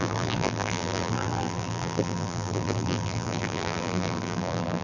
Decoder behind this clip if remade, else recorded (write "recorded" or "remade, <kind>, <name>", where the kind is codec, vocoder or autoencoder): remade, vocoder, BigVGAN v2